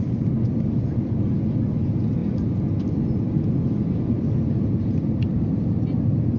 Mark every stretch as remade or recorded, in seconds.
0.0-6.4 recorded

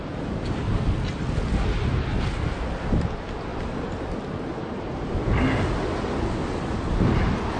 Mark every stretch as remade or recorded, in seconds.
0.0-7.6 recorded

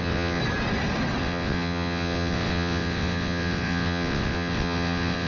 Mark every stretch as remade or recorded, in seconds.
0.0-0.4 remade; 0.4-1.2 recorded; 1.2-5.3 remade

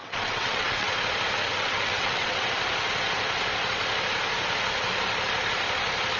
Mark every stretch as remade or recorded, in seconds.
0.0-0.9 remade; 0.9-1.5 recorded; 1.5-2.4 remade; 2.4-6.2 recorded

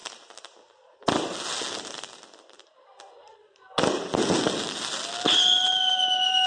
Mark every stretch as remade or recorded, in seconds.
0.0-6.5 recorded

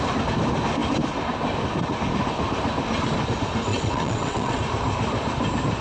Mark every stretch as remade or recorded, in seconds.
0.0-3.7 recorded; 3.7-4.6 remade; 4.6-5.8 recorded